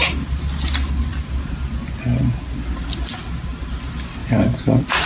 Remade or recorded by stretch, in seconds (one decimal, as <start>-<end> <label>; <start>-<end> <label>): 0.0-1.1 recorded; 1.1-1.8 remade; 1.8-4.2 recorded; 4.2-5.1 remade